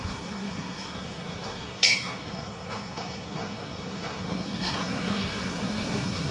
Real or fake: fake